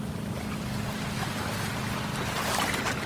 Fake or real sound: real